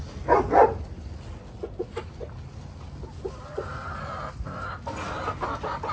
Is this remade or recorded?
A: recorded